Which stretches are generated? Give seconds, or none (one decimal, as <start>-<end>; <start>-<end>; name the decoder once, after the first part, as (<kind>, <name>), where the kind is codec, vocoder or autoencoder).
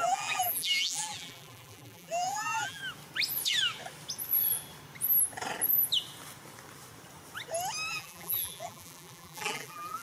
0.0-2.8 (vocoder, BigVGAN v2); 7.9-10.0